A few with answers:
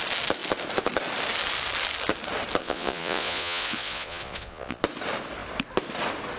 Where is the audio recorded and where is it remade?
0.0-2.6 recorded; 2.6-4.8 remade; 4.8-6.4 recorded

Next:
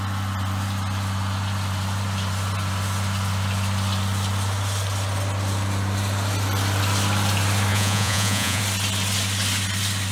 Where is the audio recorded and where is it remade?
0.0-7.7 recorded; 7.7-8.6 remade; 8.6-10.1 recorded